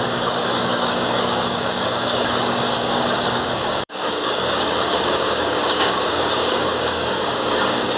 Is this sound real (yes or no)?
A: no